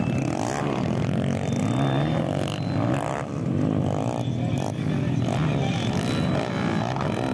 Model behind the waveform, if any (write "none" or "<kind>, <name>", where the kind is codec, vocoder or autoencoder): none